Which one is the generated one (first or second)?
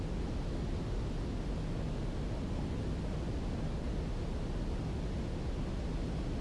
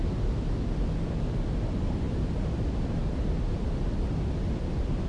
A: second